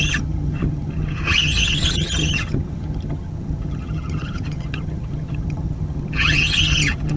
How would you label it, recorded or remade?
remade